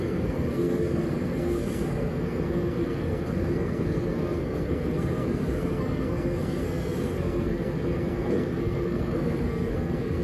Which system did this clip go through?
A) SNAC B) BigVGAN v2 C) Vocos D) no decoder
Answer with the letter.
A